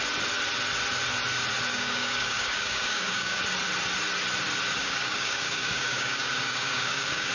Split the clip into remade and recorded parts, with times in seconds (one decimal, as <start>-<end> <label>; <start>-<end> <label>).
0.0-1.7 recorded; 1.7-3.4 remade; 3.4-4.8 recorded; 4.8-7.3 remade